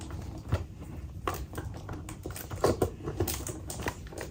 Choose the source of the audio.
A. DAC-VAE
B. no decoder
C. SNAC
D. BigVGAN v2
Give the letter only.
B